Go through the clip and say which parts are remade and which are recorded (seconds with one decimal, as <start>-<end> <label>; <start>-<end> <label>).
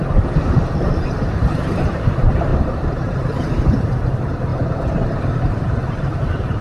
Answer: 0.0-0.8 recorded; 0.8-4.5 remade; 4.5-5.2 recorded; 5.2-6.6 remade